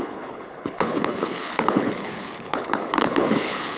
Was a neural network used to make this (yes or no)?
yes